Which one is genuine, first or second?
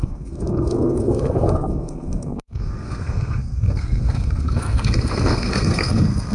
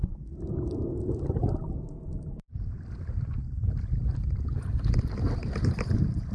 second